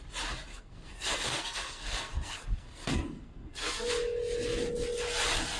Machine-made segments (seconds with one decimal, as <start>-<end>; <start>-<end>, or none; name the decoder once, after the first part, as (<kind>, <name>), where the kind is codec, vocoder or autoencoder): 0.5-3.9 (codec, SNAC)